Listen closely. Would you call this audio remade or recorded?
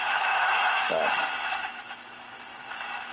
remade